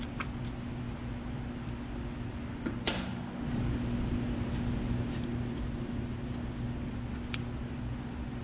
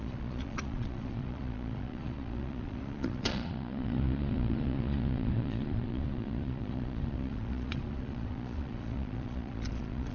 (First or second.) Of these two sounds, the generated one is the second